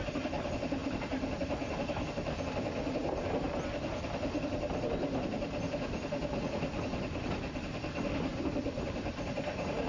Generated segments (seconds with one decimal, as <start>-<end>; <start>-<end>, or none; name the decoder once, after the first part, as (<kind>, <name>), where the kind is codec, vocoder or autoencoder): none

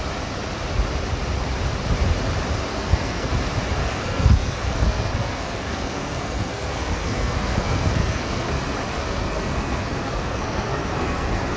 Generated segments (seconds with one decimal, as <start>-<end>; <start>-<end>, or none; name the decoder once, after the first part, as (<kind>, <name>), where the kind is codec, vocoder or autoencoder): 2.7-3.3 (codec, SNAC); 3.8-8.5; 8.9-11.6

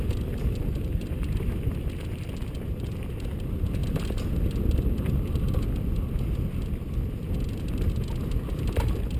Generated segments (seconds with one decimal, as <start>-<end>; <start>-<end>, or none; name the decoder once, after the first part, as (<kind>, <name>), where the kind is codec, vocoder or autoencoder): none

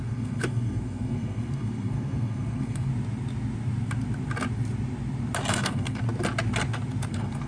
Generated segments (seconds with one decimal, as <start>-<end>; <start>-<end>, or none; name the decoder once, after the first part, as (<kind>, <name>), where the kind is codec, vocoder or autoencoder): 0.0-2.9 (codec, SNAC); 5.5-6.0; 7.1-7.5